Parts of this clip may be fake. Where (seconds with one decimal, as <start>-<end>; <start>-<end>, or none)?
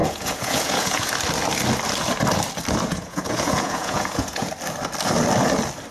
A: 0.0-1.1; 2.9-4.5